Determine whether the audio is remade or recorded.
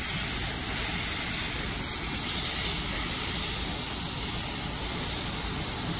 recorded